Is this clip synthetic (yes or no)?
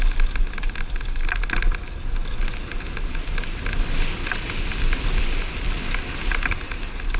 no